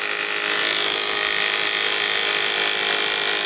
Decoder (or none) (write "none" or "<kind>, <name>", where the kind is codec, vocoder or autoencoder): none